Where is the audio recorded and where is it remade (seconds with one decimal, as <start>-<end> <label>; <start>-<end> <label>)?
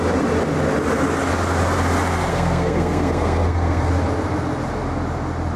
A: 0.0-2.3 recorded; 2.3-3.9 remade; 3.9-5.6 recorded